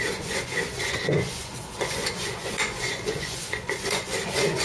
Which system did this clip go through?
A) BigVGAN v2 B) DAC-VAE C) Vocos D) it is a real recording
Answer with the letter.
C